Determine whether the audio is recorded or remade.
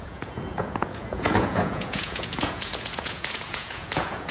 remade